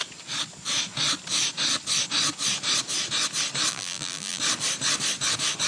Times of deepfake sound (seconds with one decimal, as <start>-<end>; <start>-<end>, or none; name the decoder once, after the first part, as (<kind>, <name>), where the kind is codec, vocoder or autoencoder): 3.7-4.4 (vocoder, BigVGAN v2)